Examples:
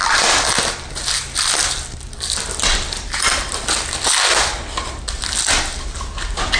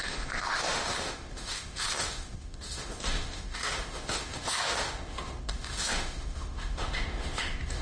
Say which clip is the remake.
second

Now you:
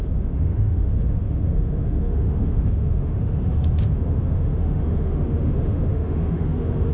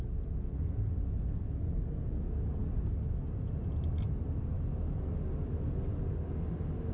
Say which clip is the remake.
first